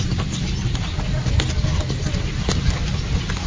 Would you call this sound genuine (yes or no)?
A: yes